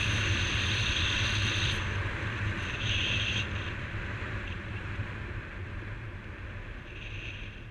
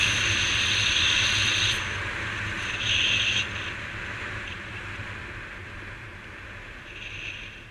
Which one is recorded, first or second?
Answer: second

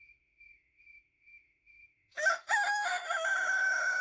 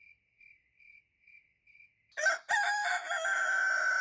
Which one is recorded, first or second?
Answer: second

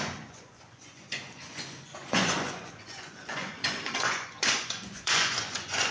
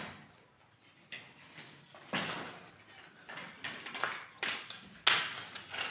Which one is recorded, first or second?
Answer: second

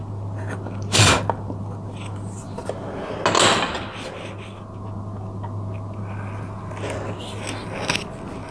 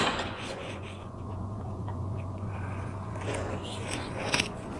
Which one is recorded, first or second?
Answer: first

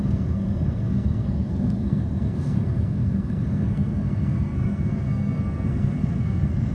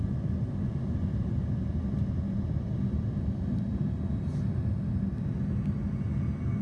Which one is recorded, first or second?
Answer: second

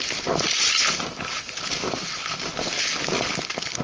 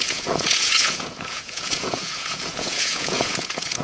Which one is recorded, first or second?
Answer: first